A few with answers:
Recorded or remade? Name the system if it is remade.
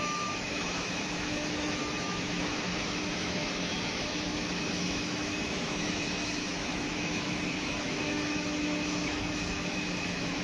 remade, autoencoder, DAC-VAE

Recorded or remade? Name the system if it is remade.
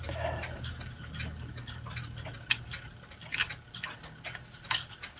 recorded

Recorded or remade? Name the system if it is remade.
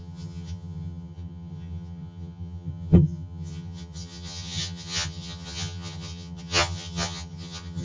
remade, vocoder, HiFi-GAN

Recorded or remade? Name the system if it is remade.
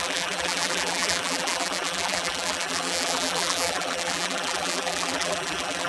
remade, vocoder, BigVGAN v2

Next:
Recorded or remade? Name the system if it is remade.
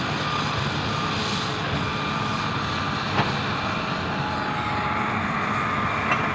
recorded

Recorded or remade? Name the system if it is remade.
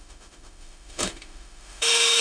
remade, autoencoder, DAC-VAE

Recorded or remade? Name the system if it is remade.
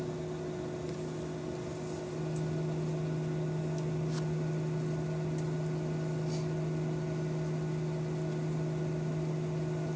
recorded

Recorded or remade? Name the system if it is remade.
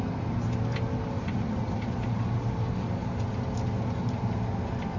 recorded